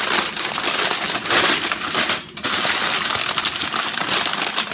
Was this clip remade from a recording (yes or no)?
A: no